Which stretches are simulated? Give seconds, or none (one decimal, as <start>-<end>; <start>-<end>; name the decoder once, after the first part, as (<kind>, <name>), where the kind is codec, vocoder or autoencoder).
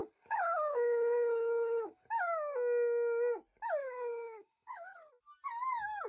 0.0-2.1 (codec, HILCodec); 3.8-5.1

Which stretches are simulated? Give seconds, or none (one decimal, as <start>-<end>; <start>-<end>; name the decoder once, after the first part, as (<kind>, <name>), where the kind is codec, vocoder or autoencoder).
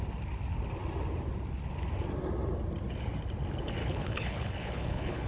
3.8-5.3 (codec, HILCodec)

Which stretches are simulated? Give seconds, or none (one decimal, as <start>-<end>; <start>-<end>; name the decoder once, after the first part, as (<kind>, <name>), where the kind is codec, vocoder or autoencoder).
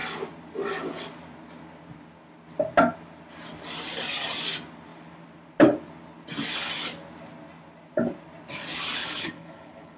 9.0-10.0 (codec, HILCodec)